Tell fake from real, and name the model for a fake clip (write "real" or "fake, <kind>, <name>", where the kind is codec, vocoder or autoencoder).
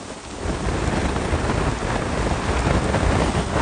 real